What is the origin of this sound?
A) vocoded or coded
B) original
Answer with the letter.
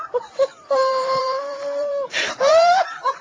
A